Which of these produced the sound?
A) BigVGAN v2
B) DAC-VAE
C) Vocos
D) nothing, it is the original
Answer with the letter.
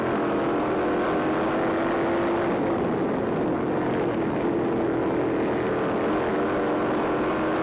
D